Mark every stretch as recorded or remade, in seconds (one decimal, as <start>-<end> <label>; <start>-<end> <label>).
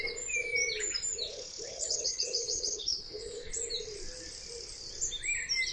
0.0-1.3 recorded; 1.3-3.5 remade; 3.5-5.7 recorded